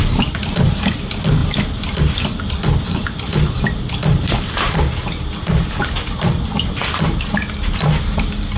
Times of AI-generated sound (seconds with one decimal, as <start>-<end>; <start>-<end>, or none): none